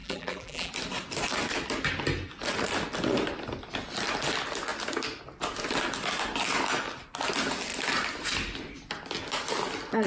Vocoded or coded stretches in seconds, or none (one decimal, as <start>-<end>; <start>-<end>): 0.0-0.7